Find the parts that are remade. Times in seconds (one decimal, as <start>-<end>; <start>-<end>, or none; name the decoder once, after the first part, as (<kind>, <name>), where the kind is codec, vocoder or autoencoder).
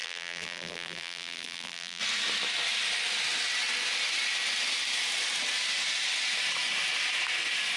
0.0-2.0 (vocoder, BigVGAN v2)